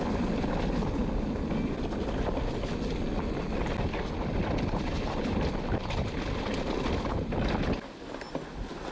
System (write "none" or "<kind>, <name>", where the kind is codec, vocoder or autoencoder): none